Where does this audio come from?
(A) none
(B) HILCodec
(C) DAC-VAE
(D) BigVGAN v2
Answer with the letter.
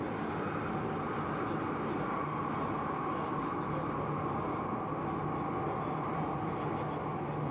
A